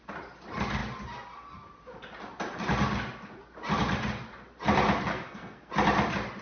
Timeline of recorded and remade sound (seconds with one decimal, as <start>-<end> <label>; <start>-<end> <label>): 0.0-5.1 recorded; 5.1-5.7 remade; 5.7-6.4 recorded